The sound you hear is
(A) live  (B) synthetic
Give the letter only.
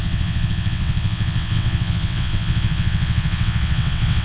B